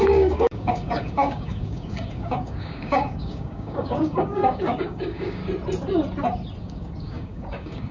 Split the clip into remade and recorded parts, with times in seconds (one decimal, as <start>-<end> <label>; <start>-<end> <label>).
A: 0.0-5.4 remade; 5.4-6.6 recorded; 6.6-7.9 remade